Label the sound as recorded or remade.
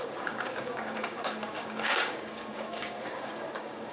remade